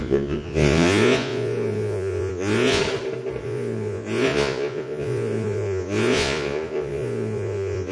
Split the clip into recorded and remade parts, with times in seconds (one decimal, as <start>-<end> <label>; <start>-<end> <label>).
0.0-2.8 remade; 2.8-3.4 recorded; 3.4-7.9 remade